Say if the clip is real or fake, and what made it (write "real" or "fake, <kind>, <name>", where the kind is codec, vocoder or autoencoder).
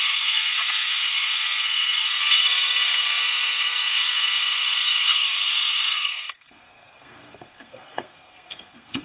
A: fake, codec, SNAC